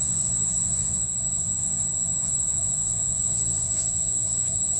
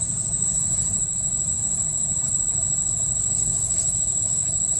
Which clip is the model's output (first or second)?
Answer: first